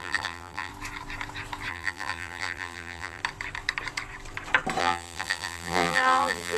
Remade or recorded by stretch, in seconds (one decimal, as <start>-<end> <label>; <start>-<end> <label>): 0.0-0.7 remade; 0.7-1.7 recorded; 1.7-3.2 remade; 3.2-4.8 recorded; 4.8-6.6 remade